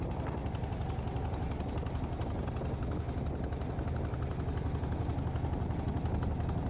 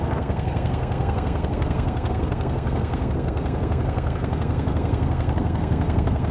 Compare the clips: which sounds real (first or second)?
first